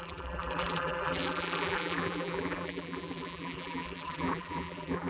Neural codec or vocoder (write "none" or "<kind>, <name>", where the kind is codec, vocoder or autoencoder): vocoder, BigVGAN v2